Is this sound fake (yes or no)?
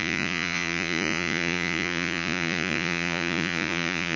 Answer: yes